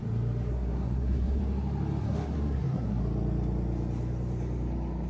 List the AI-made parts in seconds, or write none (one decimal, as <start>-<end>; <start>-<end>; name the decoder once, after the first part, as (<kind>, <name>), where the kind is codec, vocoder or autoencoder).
0.5-1.4 (codec, SNAC); 2.0-3.0

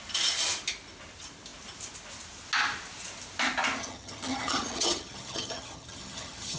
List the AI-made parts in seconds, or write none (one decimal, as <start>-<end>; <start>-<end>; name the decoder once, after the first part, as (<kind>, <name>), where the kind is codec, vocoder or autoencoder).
3.8-6.6 (vocoder, HiFi-GAN)

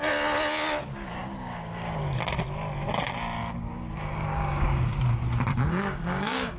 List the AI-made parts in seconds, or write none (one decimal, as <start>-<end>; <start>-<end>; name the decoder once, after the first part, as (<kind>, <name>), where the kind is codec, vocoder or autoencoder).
1.2-2.0 (codec, DAC); 3.4-5.0; 5.5-6.6